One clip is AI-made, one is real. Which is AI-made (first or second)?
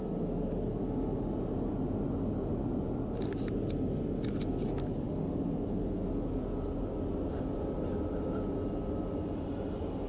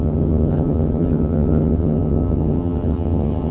second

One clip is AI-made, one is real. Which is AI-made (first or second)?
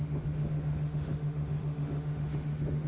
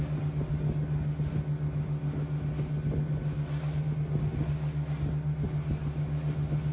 first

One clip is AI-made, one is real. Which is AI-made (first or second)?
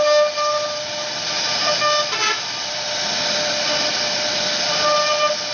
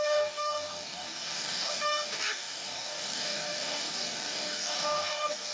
second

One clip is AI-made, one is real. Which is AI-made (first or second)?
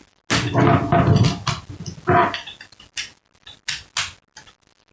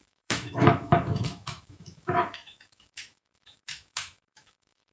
second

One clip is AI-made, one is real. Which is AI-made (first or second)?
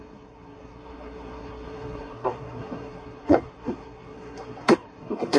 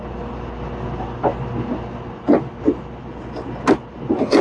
first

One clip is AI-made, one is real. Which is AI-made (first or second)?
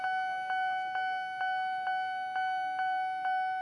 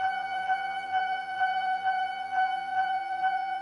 second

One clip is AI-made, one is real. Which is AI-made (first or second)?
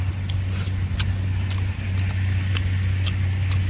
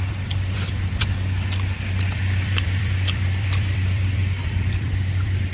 second